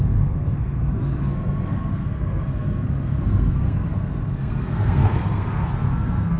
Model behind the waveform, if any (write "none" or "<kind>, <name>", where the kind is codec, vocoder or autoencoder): codec, SNAC